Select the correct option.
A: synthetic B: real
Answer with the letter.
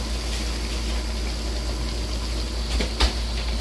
B